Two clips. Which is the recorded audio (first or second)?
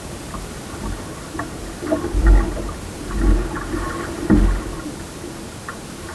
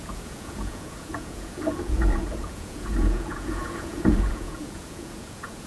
first